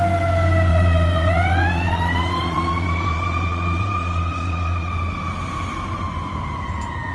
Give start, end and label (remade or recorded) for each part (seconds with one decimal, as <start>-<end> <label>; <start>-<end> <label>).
0.0-0.7 recorded; 0.7-4.9 remade; 4.9-7.1 recorded